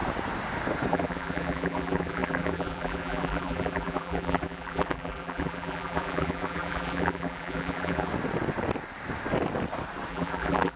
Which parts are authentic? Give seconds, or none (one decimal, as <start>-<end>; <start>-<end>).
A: 0.0-0.9; 8.1-10.1